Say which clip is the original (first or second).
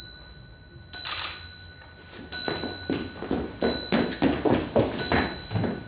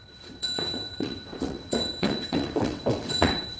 first